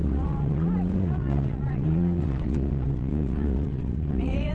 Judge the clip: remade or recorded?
remade